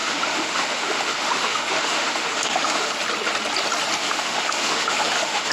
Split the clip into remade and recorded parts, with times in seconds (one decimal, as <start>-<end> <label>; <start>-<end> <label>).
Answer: 0.0-2.9 remade; 2.9-4.0 recorded; 4.0-5.5 remade